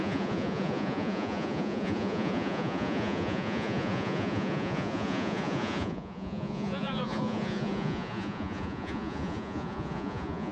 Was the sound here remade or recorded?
remade